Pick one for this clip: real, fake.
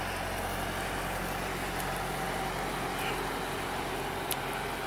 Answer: real